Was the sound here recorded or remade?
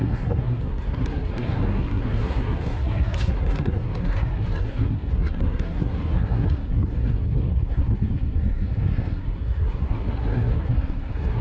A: remade